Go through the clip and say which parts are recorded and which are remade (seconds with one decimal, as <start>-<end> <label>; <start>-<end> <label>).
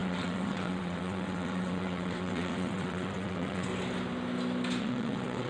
0.0-3.7 remade; 3.7-4.8 recorded; 4.8-5.5 remade